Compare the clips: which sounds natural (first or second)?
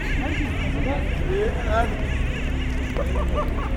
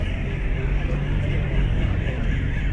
first